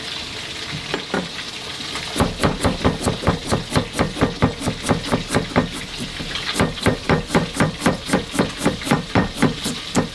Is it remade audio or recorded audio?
recorded